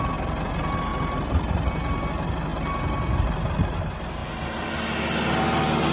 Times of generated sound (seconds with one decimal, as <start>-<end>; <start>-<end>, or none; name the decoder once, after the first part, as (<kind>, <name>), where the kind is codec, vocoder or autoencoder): none

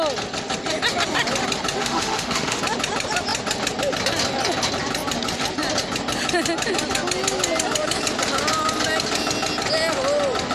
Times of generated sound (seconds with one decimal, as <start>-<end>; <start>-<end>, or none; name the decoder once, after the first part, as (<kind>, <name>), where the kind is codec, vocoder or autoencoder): 1.8-2.6 (autoencoder, DAC-VAE)

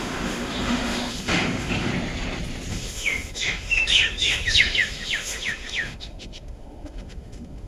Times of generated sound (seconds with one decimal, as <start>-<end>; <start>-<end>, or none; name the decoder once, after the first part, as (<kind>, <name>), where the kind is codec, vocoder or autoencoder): 0.0-1.9 (autoencoder, DAC-VAE); 2.7-7.7

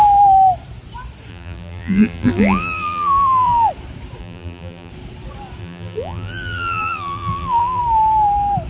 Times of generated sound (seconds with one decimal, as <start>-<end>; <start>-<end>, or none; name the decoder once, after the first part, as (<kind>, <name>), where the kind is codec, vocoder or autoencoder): 1.3-3.7 (vocoder, BigVGAN v2); 4.2-4.9; 5.6-7.8

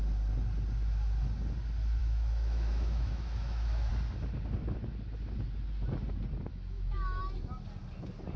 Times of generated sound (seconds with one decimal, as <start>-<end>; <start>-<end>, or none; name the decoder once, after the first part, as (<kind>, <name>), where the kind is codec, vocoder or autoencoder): 2.0-3.9 (autoencoder, DAC-VAE); 6.5-7.2

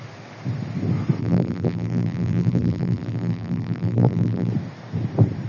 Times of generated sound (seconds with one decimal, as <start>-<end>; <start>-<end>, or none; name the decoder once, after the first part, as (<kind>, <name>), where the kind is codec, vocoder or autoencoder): 1.2-4.5 (vocoder, BigVGAN v2)

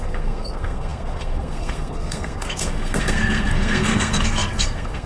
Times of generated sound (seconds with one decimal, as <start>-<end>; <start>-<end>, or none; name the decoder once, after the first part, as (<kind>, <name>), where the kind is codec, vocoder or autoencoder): 0.0-5.1 (codec, SNAC)

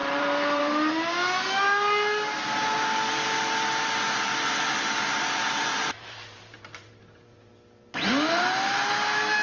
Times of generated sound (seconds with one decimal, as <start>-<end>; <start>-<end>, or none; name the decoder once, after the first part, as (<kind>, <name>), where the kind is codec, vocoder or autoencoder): 0.0-0.6 (vocoder, BigVGAN v2); 5.7-7.5